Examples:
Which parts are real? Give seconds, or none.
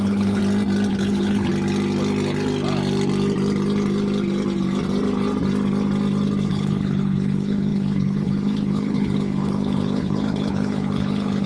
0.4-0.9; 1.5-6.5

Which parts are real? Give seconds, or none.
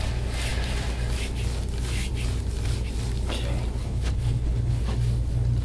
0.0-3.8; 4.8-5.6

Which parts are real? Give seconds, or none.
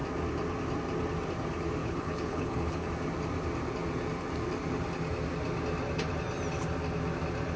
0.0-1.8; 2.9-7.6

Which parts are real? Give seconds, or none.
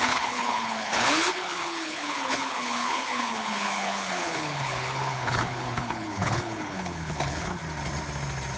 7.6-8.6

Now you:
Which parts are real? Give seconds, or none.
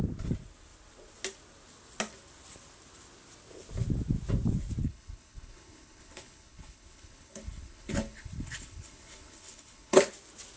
0.0-4.8; 10.0-10.6